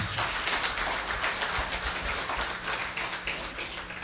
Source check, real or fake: real